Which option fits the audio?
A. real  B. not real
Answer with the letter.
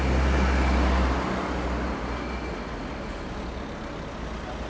A